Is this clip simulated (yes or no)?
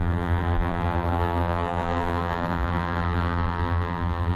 yes